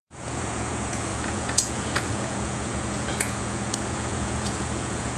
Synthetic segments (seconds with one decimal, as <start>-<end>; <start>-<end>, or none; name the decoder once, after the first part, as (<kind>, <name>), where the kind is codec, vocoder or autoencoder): 0.0-5.2 (vocoder, Vocos)